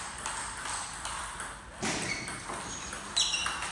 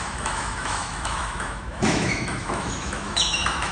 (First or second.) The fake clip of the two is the second